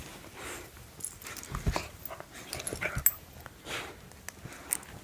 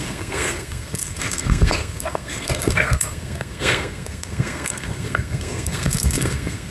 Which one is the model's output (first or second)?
second